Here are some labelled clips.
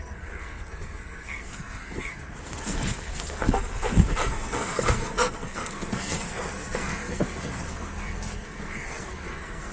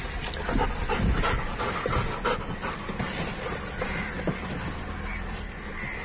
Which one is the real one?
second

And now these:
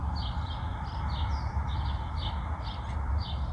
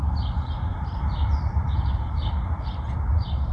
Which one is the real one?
first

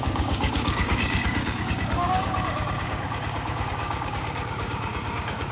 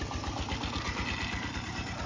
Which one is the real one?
second